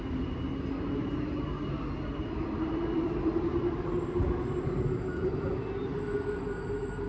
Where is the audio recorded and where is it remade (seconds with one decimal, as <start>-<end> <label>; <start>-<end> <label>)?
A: 0.0-2.1 recorded; 2.1-4.1 remade; 4.1-7.1 recorded